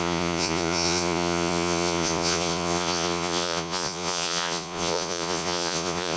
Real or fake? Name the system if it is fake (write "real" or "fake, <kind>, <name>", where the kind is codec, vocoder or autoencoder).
fake, vocoder, Vocos